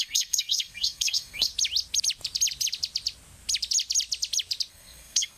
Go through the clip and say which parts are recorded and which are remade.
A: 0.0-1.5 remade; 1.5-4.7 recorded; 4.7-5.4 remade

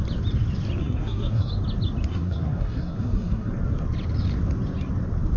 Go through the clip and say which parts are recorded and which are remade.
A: 0.0-0.8 recorded; 0.8-1.5 remade; 1.5-2.1 recorded; 2.1-3.5 remade; 3.5-5.4 recorded

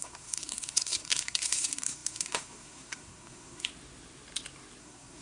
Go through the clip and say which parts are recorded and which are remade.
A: 0.0-3.7 remade; 3.7-4.8 recorded; 4.8-5.2 remade

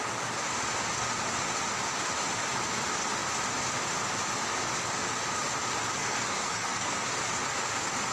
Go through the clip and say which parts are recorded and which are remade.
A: 0.0-6.0 recorded; 6.0-7.1 remade; 7.1-8.1 recorded

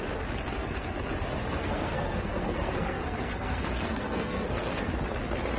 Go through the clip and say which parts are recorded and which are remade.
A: 0.0-0.6 recorded; 0.6-1.1 remade; 1.1-1.6 recorded; 1.6-4.9 remade; 4.9-5.6 recorded